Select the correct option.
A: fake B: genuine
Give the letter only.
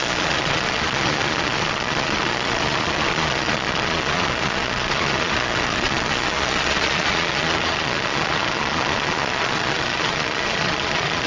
A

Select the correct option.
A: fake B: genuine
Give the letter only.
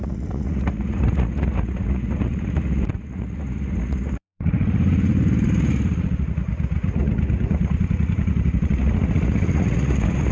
A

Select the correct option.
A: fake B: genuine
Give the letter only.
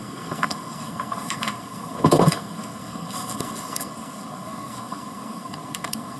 A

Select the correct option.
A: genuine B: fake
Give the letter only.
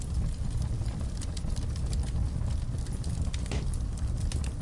A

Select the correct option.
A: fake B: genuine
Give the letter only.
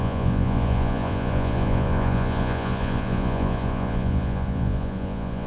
A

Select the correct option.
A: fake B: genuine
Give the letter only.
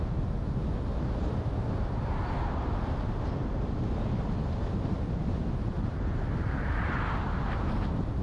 B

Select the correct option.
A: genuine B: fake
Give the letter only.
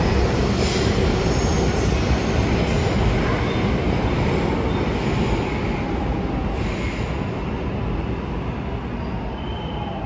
A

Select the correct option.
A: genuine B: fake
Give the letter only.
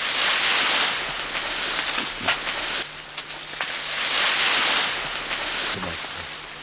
A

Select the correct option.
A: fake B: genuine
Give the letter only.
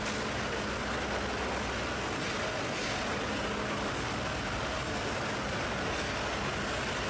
B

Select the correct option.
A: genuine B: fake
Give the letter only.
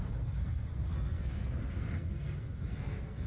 B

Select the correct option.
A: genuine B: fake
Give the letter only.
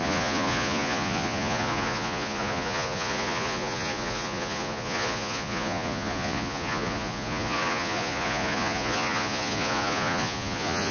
B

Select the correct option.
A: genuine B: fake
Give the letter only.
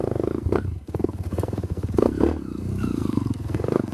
B